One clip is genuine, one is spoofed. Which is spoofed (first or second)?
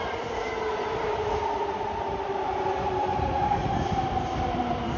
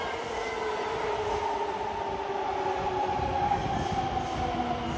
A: first